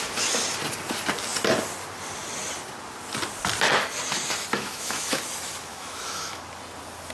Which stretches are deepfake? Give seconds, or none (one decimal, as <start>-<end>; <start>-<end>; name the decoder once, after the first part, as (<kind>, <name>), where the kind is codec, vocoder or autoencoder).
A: 4.5-5.2 (autoencoder, DAC-VAE); 5.7-6.4